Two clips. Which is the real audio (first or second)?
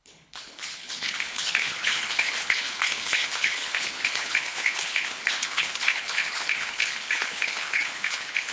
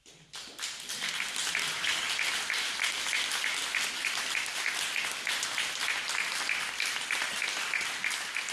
second